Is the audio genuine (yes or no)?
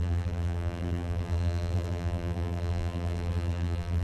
no